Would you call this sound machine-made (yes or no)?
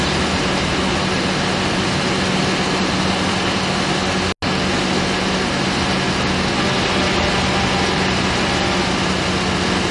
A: no